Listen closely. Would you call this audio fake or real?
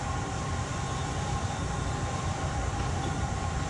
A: fake